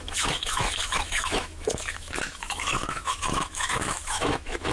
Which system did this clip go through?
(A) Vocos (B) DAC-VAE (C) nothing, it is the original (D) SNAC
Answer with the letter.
B